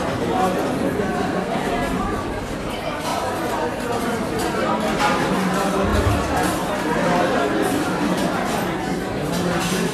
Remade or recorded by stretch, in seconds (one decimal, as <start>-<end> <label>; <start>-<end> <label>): 0.0-1.2 recorded; 1.2-1.7 remade; 1.7-9.9 recorded